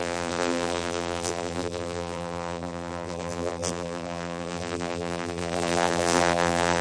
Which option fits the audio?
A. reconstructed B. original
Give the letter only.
A